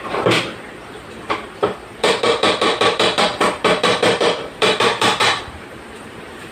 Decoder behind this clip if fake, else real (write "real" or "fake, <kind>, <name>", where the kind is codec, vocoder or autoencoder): fake, vocoder, BigVGAN v2